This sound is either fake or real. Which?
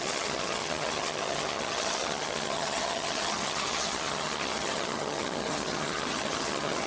fake